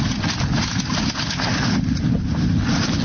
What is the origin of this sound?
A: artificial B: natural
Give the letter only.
B